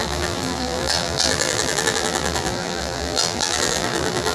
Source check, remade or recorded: remade